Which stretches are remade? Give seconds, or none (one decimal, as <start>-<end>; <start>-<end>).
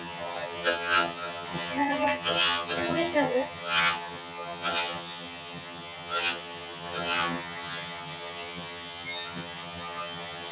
0.0-10.5